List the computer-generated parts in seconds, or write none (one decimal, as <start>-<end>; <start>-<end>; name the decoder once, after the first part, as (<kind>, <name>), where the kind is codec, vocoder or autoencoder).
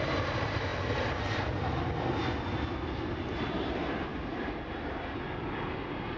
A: none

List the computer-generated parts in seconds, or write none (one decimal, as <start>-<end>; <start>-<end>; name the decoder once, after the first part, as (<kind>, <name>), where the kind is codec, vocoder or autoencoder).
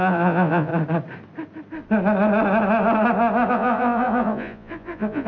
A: 0.0-0.7 (vocoder, Vocos); 3.5-5.3